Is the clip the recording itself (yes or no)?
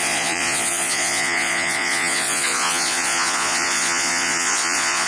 no